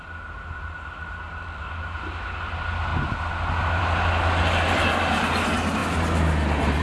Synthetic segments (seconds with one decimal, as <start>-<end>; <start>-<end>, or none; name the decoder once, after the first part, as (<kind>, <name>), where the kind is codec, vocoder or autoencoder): none